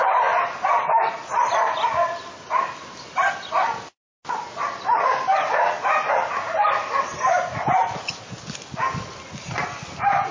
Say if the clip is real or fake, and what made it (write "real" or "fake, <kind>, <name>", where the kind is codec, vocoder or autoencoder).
real